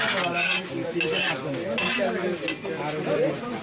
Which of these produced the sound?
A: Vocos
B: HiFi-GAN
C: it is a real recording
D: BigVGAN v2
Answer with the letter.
C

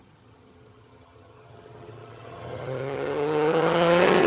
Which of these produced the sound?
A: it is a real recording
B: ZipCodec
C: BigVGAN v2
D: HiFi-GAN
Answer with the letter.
D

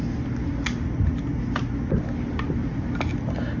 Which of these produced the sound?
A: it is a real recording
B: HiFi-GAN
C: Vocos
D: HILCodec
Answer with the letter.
A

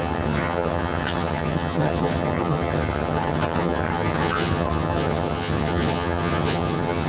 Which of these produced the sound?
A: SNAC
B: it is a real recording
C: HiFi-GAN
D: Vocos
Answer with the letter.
C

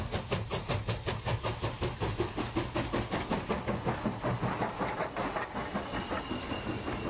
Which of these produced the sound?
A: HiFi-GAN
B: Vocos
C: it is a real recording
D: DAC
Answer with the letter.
C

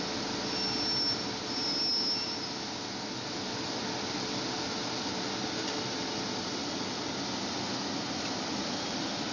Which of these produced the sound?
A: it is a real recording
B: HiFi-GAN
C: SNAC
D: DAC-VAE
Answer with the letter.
A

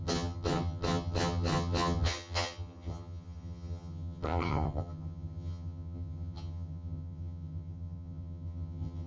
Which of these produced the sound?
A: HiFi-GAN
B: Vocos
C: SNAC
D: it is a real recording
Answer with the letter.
A